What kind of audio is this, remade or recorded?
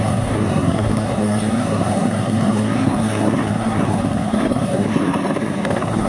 remade